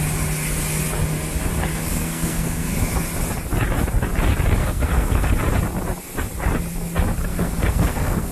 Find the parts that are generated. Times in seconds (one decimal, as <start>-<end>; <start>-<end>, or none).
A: 1.7-2.7; 4.6-5.3; 7.3-8.3